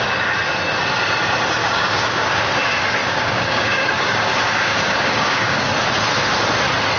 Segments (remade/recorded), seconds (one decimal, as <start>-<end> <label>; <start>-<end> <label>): 0.0-1.6 recorded; 1.6-2.4 remade; 2.4-3.0 recorded; 3.0-5.7 remade; 5.7-7.0 recorded